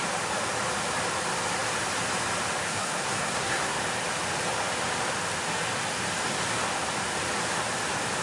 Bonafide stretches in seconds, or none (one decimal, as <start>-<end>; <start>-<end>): 0.0-2.7; 3.8-8.2